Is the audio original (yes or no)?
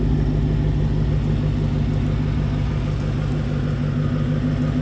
yes